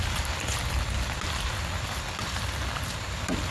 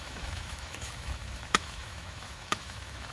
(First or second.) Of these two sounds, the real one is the first